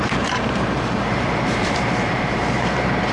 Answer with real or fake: fake